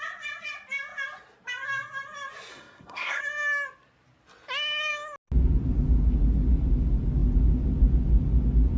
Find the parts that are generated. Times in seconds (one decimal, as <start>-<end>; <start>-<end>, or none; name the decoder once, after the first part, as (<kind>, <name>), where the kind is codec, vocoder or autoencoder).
2.5-3.2 (codec, SNAC)